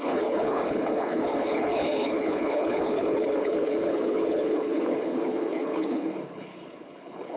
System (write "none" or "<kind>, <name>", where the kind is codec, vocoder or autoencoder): codec, HILCodec